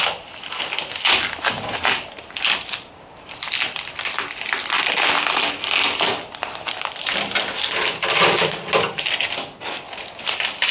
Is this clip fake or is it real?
real